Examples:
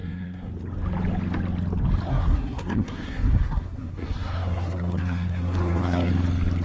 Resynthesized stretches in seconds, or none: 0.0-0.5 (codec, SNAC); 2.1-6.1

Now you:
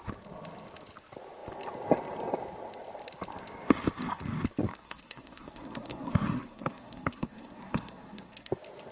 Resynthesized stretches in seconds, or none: 4.7-8.5 (codec, SNAC)